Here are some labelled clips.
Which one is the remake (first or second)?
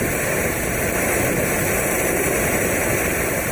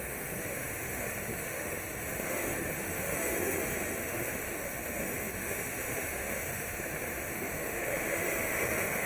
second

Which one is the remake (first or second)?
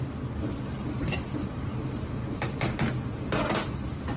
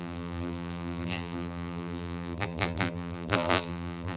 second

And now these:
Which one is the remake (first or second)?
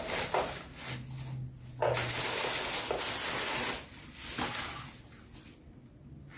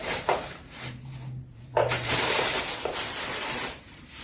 second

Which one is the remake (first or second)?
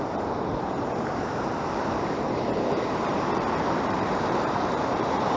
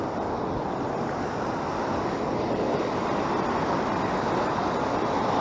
first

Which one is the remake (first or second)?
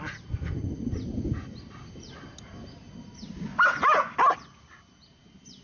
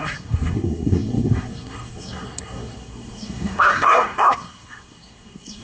second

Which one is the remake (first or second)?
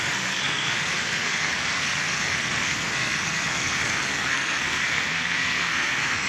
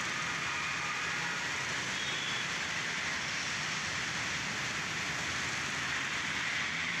first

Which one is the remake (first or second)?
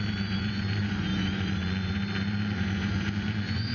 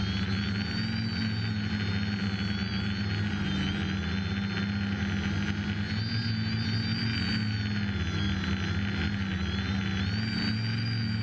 first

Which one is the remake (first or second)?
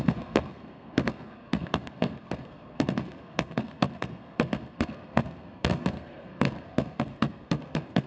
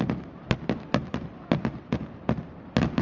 first